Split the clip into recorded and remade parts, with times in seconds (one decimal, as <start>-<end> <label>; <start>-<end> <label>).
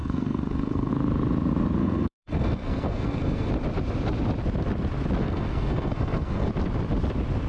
0.0-0.9 remade; 0.9-1.8 recorded; 1.8-3.5 remade; 3.5-5.2 recorded; 5.2-6.5 remade; 6.5-7.5 recorded